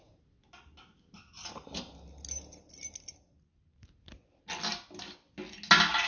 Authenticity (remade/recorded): recorded